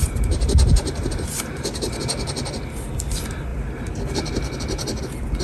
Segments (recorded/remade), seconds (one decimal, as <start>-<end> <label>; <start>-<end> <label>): 0.0-2.0 remade; 2.0-5.4 recorded